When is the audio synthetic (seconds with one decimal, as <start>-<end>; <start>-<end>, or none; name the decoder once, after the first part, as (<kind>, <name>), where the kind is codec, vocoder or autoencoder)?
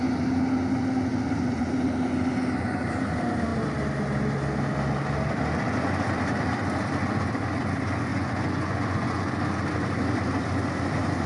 8.1-9.3 (vocoder, Vocos)